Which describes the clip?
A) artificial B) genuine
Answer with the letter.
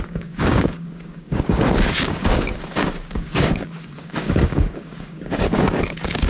A